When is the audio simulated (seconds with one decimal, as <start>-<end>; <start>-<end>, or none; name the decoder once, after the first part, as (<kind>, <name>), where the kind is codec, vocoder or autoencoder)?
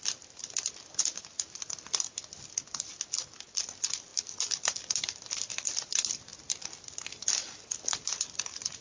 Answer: none